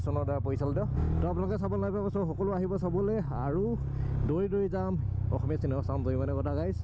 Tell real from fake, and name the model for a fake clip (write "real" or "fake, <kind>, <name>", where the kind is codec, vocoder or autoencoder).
real